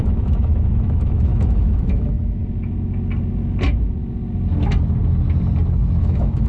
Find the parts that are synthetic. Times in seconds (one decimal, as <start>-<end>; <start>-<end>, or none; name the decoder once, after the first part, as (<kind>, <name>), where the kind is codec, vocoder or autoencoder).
0.0-2.4 (autoencoder, DAC-VAE); 6.0-6.5